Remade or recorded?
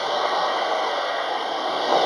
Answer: remade